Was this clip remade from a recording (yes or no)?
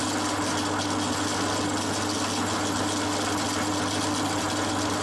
no